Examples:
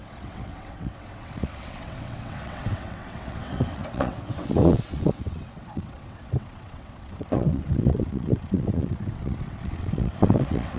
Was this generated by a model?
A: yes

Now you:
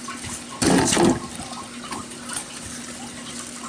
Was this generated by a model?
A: no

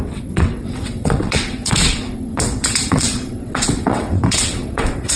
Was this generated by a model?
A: yes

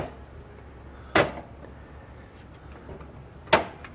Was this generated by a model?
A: no